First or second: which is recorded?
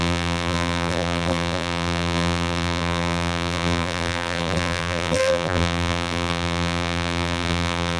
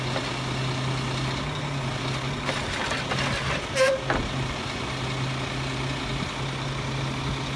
second